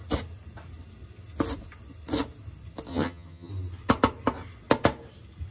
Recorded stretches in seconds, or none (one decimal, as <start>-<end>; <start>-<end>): 0.0-2.9; 3.5-5.5